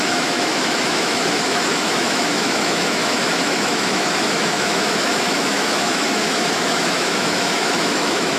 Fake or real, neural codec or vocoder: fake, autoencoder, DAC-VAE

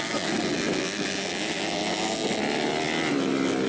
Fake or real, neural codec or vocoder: real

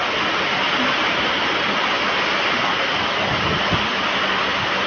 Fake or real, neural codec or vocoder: real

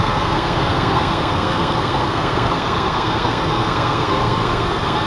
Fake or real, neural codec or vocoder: fake, codec, SNAC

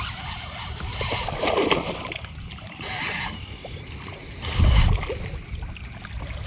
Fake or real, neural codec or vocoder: real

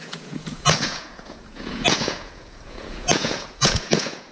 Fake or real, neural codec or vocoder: fake, vocoder, Vocos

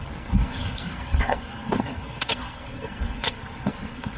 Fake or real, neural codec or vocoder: fake, codec, SNAC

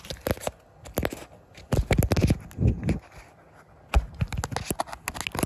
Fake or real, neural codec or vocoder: real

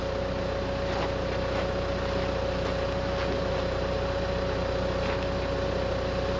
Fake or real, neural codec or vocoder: real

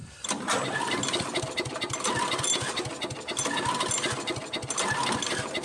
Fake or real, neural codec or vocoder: real